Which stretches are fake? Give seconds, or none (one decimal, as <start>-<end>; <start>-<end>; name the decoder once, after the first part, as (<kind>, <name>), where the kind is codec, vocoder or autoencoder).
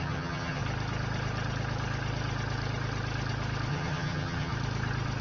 0.0-0.6 (vocoder, HiFi-GAN); 3.7-4.5